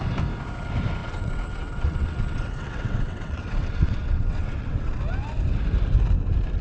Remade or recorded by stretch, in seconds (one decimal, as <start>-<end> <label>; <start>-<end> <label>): 0.0-1.0 recorded; 1.0-5.0 remade; 5.0-6.6 recorded